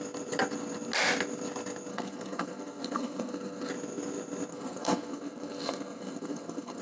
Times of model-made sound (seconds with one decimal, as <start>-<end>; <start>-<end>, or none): 1.9-3.7; 4.5-6.8